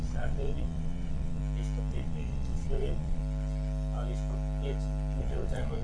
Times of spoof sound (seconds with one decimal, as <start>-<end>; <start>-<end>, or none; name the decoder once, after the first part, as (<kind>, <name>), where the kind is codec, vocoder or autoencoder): 0.0-1.4 (vocoder, Vocos); 1.9-3.2; 5.2-5.8